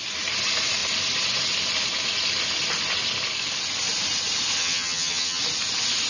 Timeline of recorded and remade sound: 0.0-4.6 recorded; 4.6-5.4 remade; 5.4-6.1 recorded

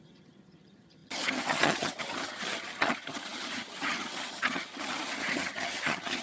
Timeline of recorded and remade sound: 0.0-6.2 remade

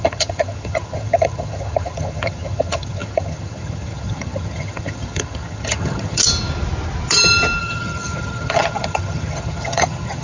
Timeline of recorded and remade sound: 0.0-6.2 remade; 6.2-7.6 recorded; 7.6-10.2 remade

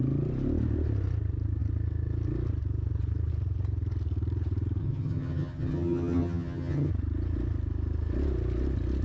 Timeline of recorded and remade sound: 0.0-4.8 recorded; 4.8-6.9 remade; 6.9-9.0 recorded